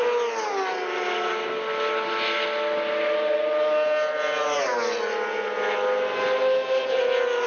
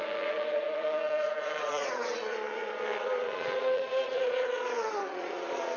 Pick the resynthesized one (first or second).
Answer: second